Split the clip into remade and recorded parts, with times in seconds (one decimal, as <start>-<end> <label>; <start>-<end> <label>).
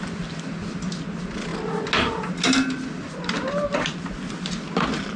0.0-5.2 recorded